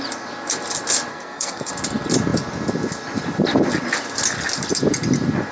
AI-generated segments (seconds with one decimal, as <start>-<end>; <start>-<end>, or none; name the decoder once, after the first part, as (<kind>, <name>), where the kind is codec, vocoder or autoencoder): 1.1-1.7 (codec, SNAC)